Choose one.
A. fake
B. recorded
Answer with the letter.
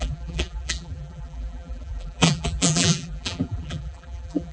A